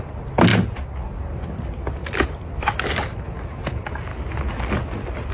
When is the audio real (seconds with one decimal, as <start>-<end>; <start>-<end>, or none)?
0.0-0.5; 1.0-2.0; 3.1-5.3